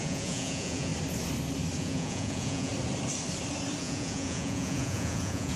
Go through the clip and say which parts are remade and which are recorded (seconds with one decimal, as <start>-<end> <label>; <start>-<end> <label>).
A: 0.0-0.9 remade; 0.9-1.8 recorded; 1.8-2.7 remade; 2.7-3.8 recorded; 3.8-5.6 remade

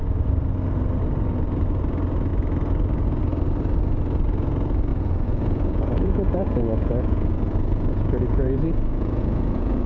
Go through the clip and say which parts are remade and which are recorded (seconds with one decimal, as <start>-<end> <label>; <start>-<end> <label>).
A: 0.0-4.9 recorded; 4.9-9.9 remade

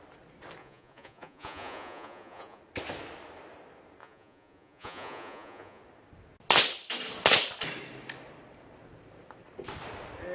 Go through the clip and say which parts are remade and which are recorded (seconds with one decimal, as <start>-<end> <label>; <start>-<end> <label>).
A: 0.0-0.6 recorded; 0.6-2.6 remade; 2.6-4.0 recorded; 4.0-5.8 remade; 5.8-10.3 recorded

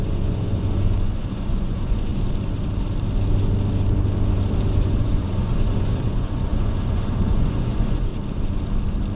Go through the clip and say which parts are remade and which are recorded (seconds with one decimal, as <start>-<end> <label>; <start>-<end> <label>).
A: 0.0-2.1 remade; 2.1-4.8 recorded; 4.8-8.1 remade; 8.1-9.2 recorded

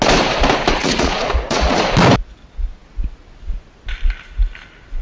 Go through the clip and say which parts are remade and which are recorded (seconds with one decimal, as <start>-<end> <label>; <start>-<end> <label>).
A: 0.0-0.8 recorded; 0.8-1.8 remade; 1.8-5.0 recorded